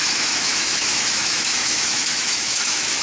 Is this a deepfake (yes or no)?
yes